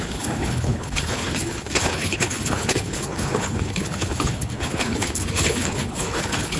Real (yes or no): no